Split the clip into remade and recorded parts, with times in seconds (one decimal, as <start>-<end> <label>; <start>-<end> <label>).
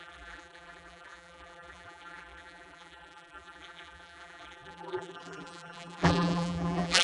0.0-7.0 remade